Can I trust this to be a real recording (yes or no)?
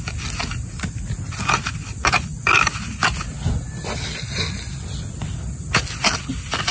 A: yes